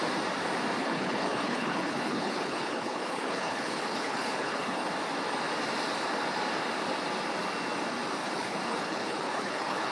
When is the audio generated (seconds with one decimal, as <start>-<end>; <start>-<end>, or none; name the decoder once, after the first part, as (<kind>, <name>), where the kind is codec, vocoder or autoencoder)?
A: 0.8-4.9 (codec, HILCodec); 8.2-9.9